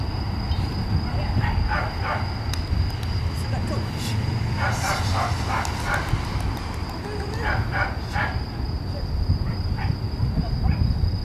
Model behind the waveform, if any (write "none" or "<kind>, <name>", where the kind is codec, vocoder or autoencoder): none